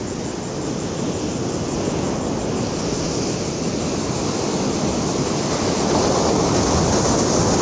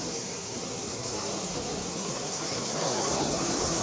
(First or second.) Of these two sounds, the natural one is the first